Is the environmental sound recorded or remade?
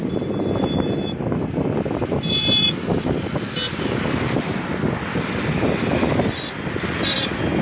recorded